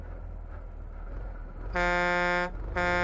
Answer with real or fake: real